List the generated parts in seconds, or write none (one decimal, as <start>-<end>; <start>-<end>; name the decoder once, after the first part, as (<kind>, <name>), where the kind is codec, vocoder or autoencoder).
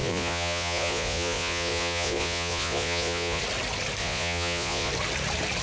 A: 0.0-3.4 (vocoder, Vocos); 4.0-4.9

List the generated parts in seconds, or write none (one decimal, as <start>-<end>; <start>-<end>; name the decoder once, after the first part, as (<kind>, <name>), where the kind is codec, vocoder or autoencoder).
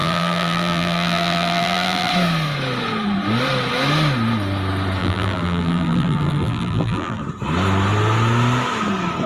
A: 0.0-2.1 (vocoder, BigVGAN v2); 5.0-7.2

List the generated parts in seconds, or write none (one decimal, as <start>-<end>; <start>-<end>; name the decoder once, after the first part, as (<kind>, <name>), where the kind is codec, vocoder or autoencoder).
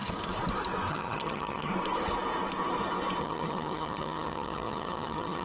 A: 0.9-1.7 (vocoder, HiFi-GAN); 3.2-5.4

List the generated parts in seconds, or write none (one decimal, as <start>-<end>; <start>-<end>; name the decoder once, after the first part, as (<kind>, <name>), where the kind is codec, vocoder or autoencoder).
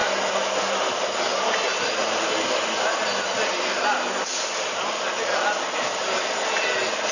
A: none